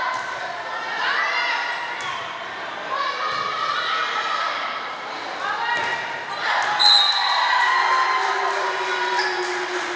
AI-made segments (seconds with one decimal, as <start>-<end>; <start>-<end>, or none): none